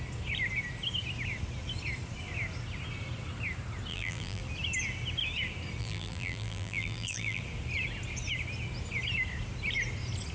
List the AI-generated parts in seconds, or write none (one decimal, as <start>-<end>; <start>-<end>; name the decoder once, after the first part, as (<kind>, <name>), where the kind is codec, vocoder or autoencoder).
3.9-4.4 (vocoder, BigVGAN v2); 5.8-7.4